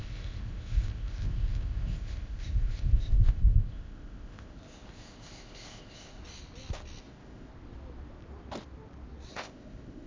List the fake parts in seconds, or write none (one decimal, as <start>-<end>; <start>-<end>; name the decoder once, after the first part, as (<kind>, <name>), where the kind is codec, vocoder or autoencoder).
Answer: 0.0-6.2 (codec, ZipCodec); 7.0-7.5; 9.3-10.1